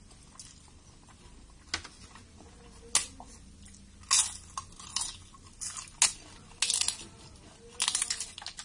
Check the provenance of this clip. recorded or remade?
recorded